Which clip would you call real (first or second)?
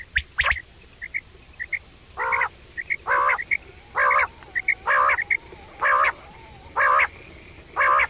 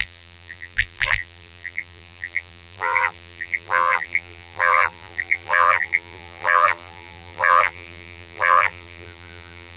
first